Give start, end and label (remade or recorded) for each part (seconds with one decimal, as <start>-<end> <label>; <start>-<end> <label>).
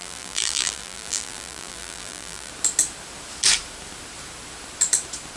0.0-2.5 remade; 2.5-5.4 recorded